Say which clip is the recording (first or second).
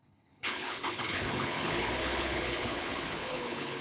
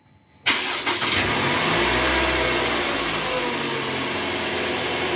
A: second